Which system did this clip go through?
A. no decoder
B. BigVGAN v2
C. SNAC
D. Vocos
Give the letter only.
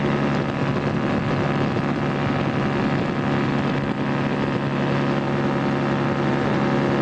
A